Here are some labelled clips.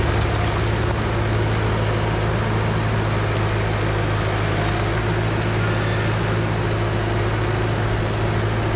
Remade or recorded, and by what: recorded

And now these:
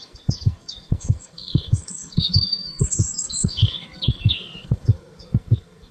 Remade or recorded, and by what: remade, codec, SNAC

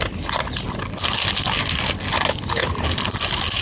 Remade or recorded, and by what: recorded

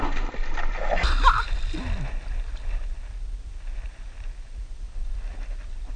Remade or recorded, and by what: recorded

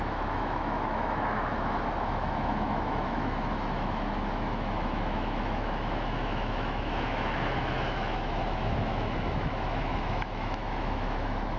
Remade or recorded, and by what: remade, autoencoder, DAC-VAE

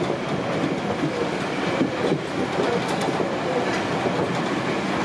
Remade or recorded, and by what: recorded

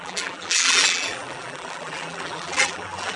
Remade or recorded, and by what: remade, vocoder, BigVGAN v2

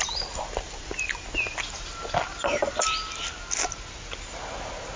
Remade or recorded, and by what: recorded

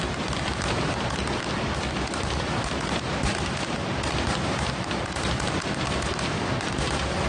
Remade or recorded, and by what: recorded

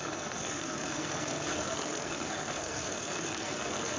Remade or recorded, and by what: remade, codec, SNAC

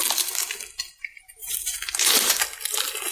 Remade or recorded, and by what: recorded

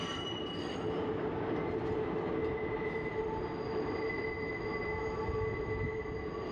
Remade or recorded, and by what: recorded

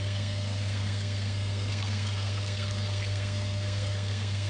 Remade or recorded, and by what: remade, codec, SNAC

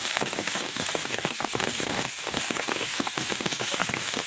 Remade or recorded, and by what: remade, codec, DAC